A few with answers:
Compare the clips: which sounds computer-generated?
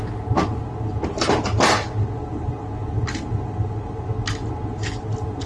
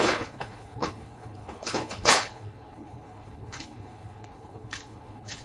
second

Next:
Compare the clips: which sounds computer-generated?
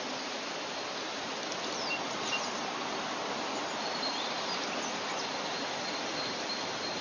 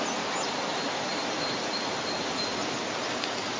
first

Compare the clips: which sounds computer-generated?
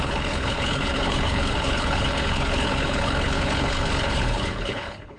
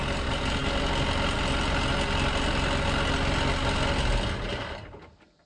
first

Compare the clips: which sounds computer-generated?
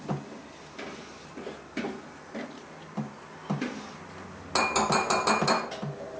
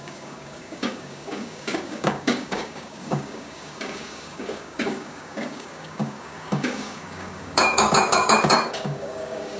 second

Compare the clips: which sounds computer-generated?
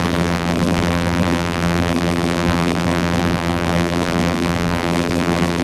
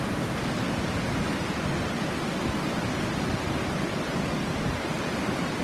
first